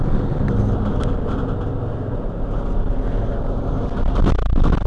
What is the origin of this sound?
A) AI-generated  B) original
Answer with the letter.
B